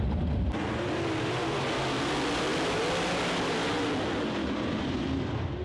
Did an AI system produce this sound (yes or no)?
no